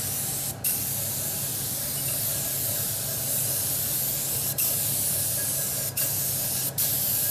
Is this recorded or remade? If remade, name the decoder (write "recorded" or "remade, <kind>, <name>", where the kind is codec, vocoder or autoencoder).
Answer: recorded